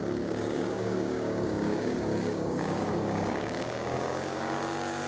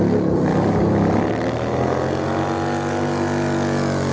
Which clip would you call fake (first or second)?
first